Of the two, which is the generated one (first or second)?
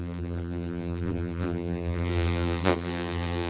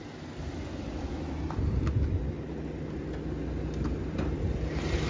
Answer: first